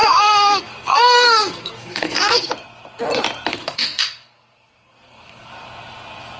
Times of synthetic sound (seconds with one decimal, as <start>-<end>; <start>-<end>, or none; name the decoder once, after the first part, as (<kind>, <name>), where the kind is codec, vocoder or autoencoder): 0.0-2.5 (codec, SNAC); 3.5-5.5